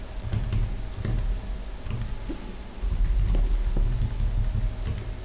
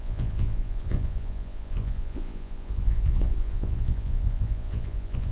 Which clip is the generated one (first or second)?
second